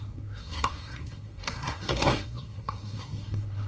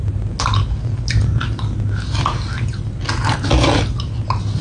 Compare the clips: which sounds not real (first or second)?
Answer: first